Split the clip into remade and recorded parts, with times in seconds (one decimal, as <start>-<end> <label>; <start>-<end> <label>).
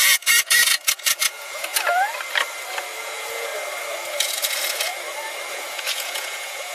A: 0.0-1.7 remade; 1.7-3.0 recorded; 3.0-3.5 remade; 3.5-4.1 recorded; 4.1-4.9 remade; 4.9-5.5 recorded; 5.5-6.7 remade